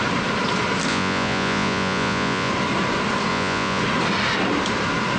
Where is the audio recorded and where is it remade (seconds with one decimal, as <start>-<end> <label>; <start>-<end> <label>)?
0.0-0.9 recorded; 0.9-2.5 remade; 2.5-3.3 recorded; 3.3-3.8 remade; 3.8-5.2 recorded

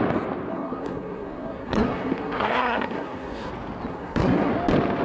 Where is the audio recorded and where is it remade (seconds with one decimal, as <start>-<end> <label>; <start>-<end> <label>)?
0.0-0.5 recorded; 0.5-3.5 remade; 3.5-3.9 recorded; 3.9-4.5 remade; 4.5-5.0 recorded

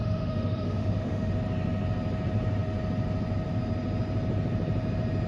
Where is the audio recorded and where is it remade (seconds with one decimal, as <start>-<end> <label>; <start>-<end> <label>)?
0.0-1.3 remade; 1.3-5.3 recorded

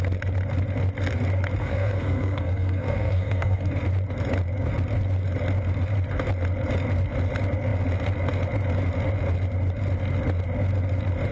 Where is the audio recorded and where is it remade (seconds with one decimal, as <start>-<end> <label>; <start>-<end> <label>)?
0.0-1.6 recorded; 1.6-3.7 remade; 3.7-11.3 recorded

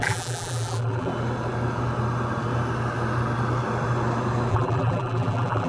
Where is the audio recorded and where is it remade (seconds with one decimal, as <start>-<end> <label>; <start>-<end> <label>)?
0.0-1.1 remade; 1.1-4.5 recorded; 4.5-5.7 remade

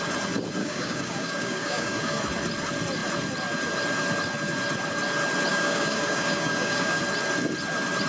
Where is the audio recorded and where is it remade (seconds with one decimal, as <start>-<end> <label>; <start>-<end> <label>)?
0.0-0.6 recorded; 0.6-2.2 remade; 2.2-5.5 recorded; 5.5-7.0 remade; 7.0-8.1 recorded